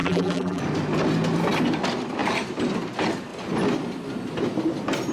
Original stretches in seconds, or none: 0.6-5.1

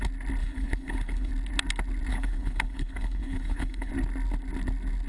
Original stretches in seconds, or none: 0.0-0.4; 1.3-2.1; 3.9-5.1

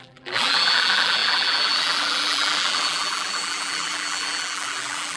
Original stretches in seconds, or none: none

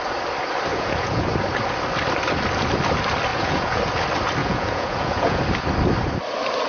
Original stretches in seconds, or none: 0.0-0.7; 1.3-3.3; 3.8-4.4; 5.4-6.7

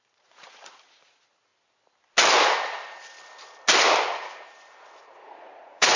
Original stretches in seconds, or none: 1.5-5.1

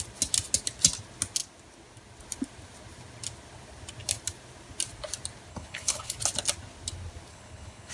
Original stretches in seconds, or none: 0.0-5.5; 6.1-7.3